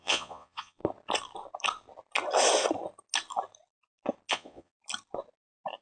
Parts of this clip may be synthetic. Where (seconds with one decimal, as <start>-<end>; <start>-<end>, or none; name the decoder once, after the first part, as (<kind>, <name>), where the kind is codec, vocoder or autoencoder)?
0.0-0.8 (vocoder, Vocos); 4.3-4.7